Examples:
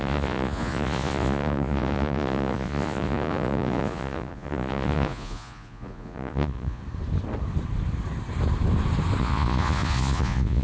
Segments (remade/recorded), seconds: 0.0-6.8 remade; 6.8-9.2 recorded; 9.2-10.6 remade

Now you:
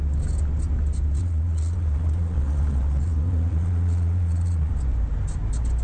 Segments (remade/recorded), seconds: 0.0-1.2 recorded; 1.2-4.7 remade; 4.7-5.8 recorded

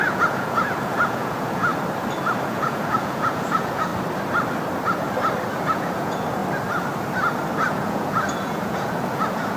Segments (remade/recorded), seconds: 0.0-1.7 remade; 1.7-2.5 recorded; 2.5-3.9 remade; 3.9-5.5 recorded; 5.5-6.4 remade; 6.4-7.7 recorded; 7.7-9.6 remade

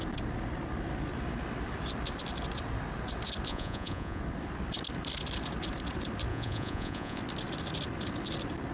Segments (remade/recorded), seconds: 0.0-3.5 recorded; 3.5-4.2 remade; 4.2-6.3 recorded; 6.3-7.2 remade; 7.2-8.7 recorded